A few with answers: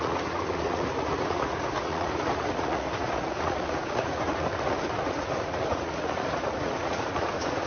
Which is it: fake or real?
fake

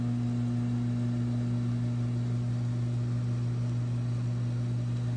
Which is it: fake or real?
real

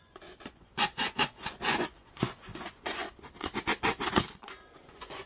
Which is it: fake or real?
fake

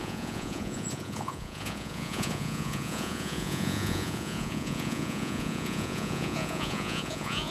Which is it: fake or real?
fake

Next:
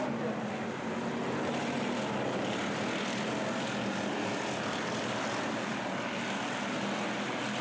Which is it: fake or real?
real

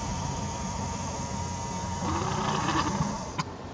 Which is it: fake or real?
real